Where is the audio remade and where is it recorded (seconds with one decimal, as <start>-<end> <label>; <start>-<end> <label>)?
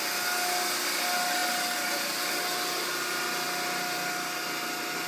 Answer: 0.0-5.1 recorded